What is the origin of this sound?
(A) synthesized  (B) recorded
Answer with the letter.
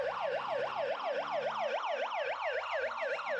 B